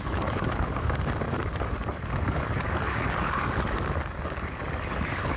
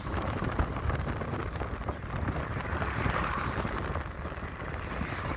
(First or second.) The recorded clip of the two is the second